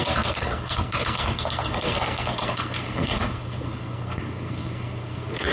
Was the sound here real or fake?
fake